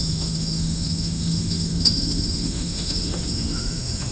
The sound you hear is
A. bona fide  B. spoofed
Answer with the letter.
B